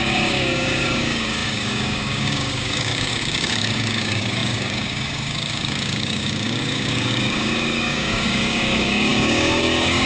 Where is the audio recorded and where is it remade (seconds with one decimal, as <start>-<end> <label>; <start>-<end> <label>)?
0.0-10.1 remade